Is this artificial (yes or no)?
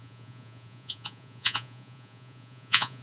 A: yes